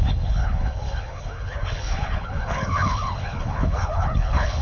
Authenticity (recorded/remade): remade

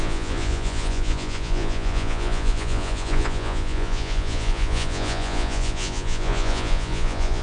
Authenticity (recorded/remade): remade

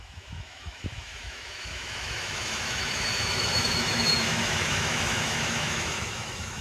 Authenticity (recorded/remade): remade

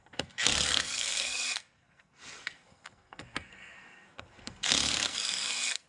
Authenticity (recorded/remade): remade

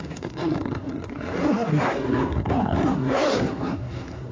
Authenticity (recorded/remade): remade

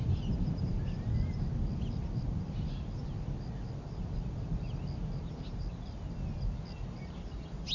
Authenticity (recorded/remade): recorded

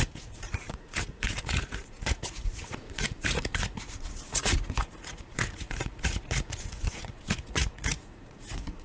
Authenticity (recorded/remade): remade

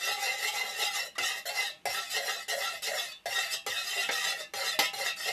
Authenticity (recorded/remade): recorded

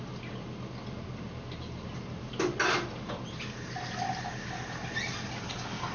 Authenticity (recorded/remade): recorded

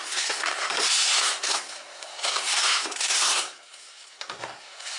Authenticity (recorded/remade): remade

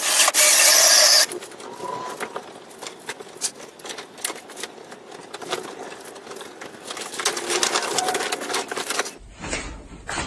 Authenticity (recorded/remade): recorded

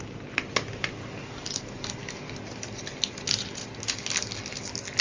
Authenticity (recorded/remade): recorded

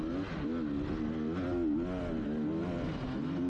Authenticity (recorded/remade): recorded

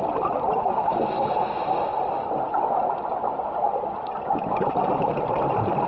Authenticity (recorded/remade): recorded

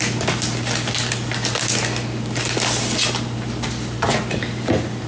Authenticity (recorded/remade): recorded